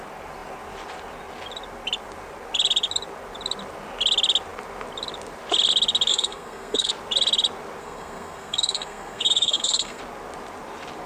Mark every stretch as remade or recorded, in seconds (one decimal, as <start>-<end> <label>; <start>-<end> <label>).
0.0-6.1 recorded; 6.1-6.9 remade; 6.9-7.8 recorded; 7.8-10.0 remade; 10.0-11.1 recorded